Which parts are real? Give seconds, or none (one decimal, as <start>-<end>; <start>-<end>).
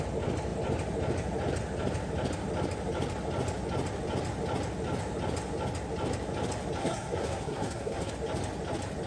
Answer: 0.0-6.8; 8.1-9.1